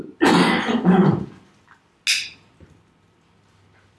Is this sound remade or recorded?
recorded